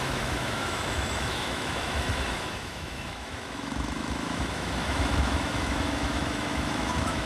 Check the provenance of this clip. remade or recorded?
remade